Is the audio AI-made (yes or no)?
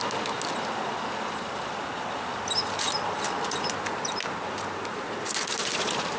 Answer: no